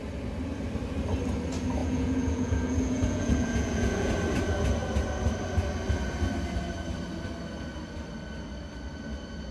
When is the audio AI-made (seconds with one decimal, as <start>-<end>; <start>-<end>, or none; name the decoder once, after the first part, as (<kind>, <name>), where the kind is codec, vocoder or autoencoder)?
1.8-4.1 (vocoder, Vocos)

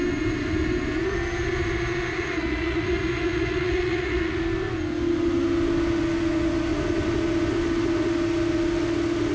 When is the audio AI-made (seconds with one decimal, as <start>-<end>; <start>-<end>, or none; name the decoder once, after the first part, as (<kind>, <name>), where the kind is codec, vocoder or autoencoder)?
2.1-4.4 (vocoder, Vocos)

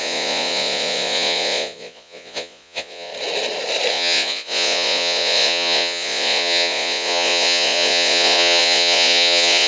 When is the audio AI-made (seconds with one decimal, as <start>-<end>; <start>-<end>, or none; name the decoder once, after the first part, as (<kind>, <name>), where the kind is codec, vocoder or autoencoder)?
0.0-3.1 (vocoder, Vocos); 3.9-9.7

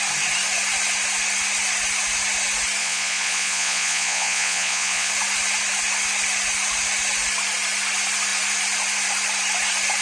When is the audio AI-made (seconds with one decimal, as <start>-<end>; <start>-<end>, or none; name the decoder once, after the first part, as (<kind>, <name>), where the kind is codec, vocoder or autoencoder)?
2.8-5.1 (vocoder, Vocos)

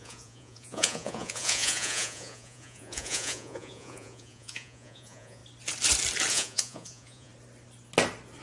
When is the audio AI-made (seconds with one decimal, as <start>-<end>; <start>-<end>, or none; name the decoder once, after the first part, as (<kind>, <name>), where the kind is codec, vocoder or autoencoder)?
0.0-5.4 (vocoder, Vocos); 6.3-7.3

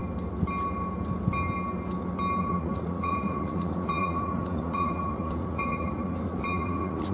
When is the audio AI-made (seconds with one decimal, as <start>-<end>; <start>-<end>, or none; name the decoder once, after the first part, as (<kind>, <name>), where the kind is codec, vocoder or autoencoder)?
2.4-7.1 (vocoder, Vocos)

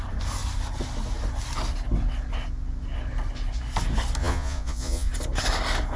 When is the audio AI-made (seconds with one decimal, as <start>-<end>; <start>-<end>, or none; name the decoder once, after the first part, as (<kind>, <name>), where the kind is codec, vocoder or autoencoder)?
4.2-5.1 (vocoder, Vocos)

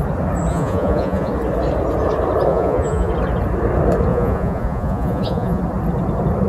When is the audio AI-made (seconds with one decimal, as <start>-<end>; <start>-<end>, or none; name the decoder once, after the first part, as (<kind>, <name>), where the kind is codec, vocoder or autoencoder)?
0.5-1.3 (vocoder, Vocos); 2.5-3.1; 4.1-5.6